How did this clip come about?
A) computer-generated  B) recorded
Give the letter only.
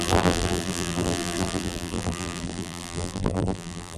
A